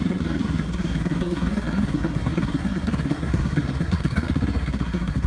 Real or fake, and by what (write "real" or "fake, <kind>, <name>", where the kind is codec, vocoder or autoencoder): fake, codec, SNAC